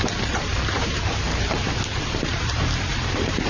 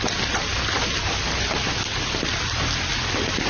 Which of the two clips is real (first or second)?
second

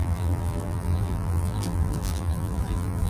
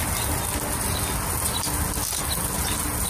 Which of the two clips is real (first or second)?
second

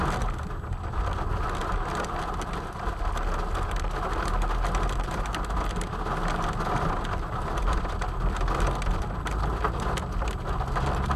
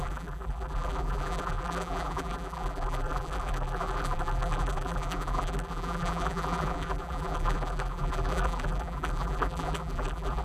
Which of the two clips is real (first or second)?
first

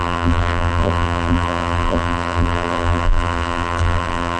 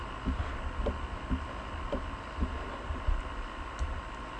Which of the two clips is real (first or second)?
second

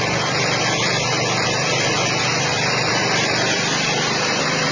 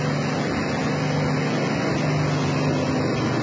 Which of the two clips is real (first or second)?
second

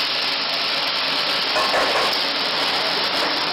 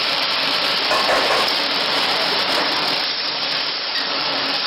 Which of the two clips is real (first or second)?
first